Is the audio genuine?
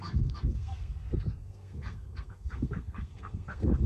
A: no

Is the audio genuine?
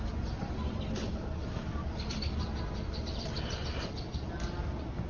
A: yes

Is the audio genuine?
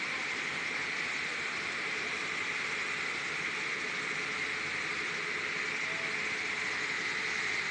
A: yes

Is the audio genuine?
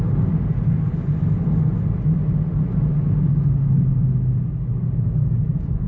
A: yes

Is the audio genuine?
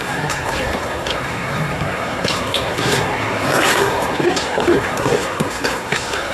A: no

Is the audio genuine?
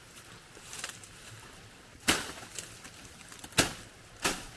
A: yes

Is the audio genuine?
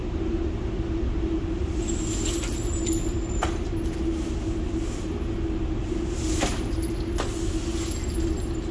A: yes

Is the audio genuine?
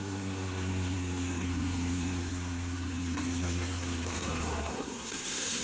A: no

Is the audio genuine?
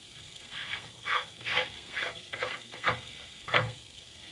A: no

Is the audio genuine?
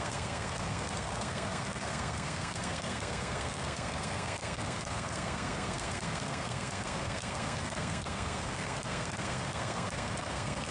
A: no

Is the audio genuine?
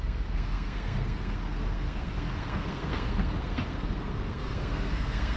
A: no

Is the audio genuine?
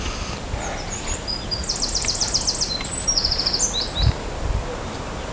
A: yes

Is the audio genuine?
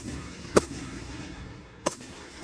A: no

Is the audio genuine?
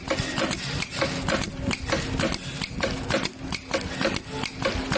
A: yes